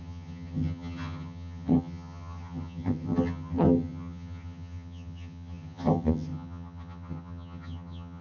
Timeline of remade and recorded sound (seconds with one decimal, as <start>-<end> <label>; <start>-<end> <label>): 0.0-8.2 remade